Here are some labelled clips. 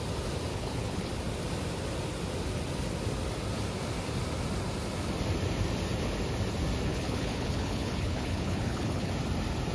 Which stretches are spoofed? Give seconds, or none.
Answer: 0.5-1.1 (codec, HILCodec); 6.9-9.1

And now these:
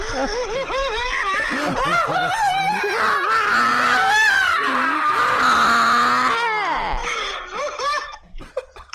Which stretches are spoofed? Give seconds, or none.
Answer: 0.8-2.9 (vocoder, BigVGAN v2); 3.7-5.4; 7.0-8.5

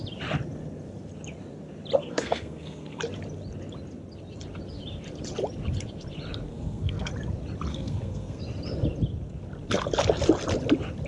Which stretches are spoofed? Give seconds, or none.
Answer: 2.0-3.0 (codec, SNAC); 6.5-7.1; 7.7-8.4

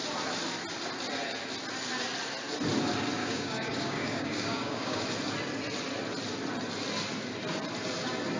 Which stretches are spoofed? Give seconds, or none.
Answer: 3.2-5.0 (codec, DAC)